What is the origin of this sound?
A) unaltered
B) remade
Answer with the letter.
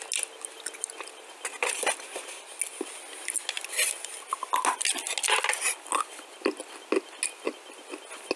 A